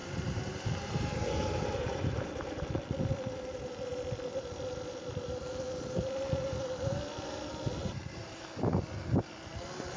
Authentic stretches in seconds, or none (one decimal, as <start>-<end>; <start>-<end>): 2.6-7.8; 8.4-10.0